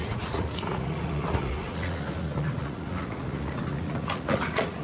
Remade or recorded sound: remade